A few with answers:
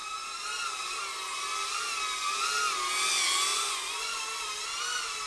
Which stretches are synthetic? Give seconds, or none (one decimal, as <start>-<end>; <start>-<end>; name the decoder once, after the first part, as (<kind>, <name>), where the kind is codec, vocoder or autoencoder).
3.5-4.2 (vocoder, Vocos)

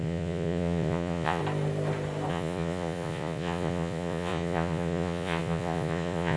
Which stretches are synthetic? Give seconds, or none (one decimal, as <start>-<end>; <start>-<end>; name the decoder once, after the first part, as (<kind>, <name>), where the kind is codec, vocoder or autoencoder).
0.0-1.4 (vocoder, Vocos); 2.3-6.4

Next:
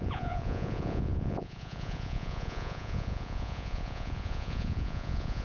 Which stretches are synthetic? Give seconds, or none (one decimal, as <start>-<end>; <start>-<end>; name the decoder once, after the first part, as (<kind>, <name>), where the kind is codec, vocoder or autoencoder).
0.0-5.4 (vocoder, Vocos)

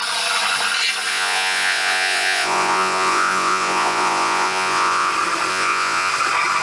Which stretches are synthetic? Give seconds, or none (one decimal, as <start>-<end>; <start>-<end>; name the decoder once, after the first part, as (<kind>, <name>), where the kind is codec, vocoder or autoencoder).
1.1-5.1 (vocoder, Vocos); 5.5-6.1